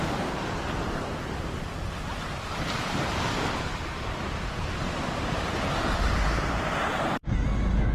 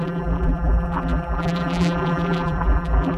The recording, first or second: first